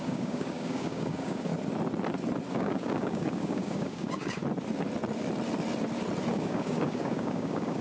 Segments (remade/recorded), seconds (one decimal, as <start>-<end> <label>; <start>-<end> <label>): 0.0-1.5 remade; 1.5-2.5 recorded; 2.5-4.4 remade; 4.4-6.3 recorded; 6.3-7.8 remade